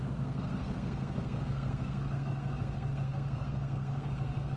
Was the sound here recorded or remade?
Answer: remade